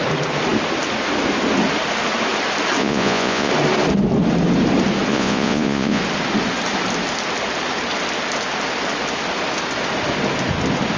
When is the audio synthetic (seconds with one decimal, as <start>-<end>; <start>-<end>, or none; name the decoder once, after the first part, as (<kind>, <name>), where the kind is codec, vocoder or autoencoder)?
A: 2.8-3.5 (vocoder, Vocos); 5.1-6.0